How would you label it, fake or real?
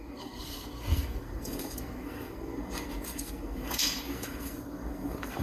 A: fake